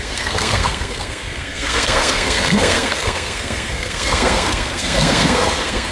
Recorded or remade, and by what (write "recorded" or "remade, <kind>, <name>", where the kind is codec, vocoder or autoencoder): remade, codec, SNAC